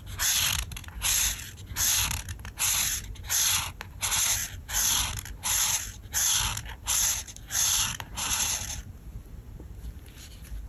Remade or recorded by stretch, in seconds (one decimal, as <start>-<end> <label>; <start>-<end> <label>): 0.0-10.7 recorded